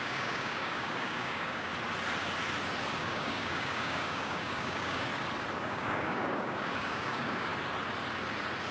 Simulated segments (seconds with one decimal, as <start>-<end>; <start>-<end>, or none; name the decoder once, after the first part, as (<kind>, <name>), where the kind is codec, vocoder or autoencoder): 0.0-1.7 (codec, DAC); 3.0-5.1; 5.6-7.5